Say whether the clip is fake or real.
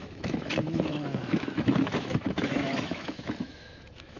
fake